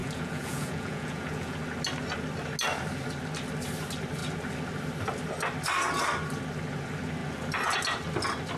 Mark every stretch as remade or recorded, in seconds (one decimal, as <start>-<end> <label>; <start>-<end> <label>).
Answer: 0.0-1.6 remade; 1.6-8.6 recorded